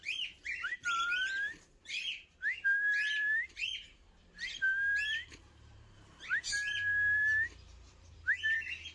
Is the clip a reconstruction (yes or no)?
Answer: yes